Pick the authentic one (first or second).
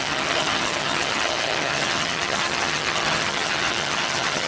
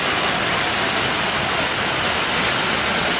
second